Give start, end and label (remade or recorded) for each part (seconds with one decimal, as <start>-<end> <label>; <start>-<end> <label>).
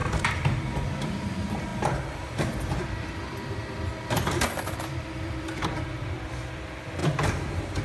0.0-1.0 recorded; 1.0-7.8 remade